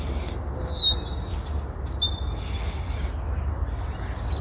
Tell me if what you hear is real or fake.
real